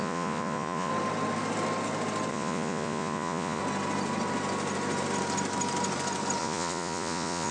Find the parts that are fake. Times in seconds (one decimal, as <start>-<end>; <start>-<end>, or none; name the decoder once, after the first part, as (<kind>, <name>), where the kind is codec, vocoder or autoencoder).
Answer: 0.0-0.9 (vocoder, Vocos); 2.3-3.6; 6.4-7.5